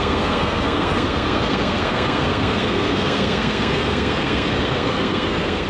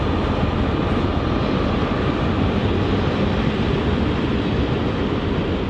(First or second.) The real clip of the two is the second